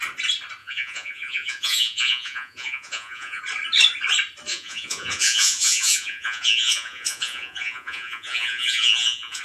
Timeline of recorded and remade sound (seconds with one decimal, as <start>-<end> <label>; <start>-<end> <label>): 0.0-0.6 recorded; 0.6-3.4 remade; 3.4-4.5 recorded; 4.5-9.4 remade